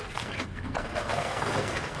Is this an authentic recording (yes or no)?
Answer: no